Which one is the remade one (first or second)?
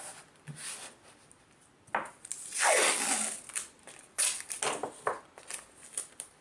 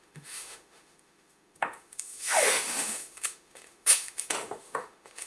second